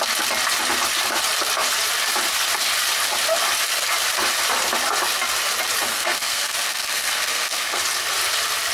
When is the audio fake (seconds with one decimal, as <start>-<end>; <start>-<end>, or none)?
5.9-7.8